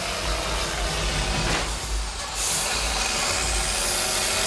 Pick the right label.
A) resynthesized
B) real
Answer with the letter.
B